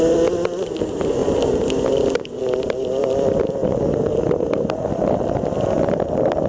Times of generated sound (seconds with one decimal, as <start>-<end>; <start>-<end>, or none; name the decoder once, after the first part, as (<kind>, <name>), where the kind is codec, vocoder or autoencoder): none